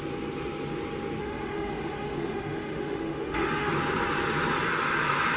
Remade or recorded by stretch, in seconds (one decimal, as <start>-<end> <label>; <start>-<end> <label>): 0.0-1.2 recorded; 1.2-3.7 remade; 3.7-5.4 recorded